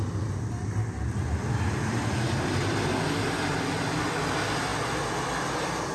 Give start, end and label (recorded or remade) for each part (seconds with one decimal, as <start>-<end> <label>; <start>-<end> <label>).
0.0-5.9 recorded